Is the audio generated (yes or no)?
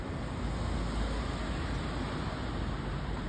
no